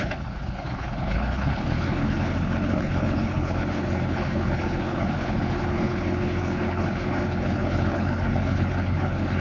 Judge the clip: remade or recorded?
remade